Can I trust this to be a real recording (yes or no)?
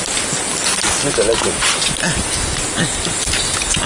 yes